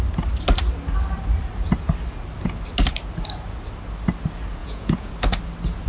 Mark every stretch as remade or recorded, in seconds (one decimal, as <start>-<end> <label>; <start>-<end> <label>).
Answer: 0.0-4.6 recorded; 4.6-5.1 remade; 5.1-5.9 recorded